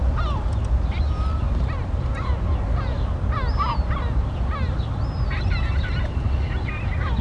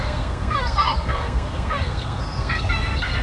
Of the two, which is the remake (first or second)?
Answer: second